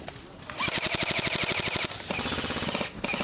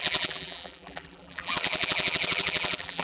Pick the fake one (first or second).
second